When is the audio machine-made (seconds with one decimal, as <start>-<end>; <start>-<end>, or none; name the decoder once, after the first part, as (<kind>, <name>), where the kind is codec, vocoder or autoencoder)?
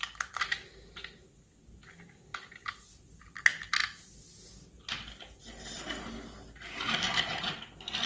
none